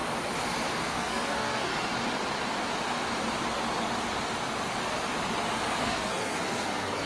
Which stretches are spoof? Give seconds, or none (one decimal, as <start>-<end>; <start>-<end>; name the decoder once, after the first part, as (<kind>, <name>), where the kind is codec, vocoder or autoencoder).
0.7-1.7 (codec, SNAC); 5.8-7.1